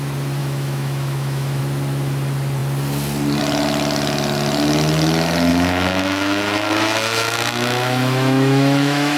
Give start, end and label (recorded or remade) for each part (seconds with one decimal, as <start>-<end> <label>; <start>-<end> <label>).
0.0-0.4 recorded; 0.4-1.6 remade; 1.6-5.5 recorded; 5.5-9.2 remade